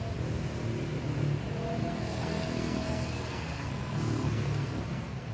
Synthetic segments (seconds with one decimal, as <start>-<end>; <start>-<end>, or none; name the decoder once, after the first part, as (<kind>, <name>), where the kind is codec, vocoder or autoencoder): 1.8-5.3 (codec, SNAC)